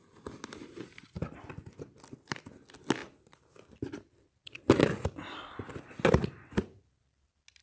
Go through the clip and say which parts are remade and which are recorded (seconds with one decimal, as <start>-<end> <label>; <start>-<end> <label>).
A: 0.0-7.6 recorded